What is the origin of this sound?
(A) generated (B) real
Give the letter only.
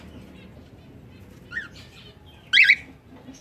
B